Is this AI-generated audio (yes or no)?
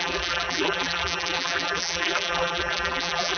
yes